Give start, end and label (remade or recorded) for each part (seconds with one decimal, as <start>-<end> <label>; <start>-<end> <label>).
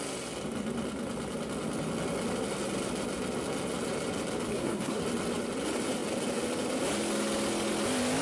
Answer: 0.0-4.5 recorded; 4.5-5.0 remade; 5.0-8.2 recorded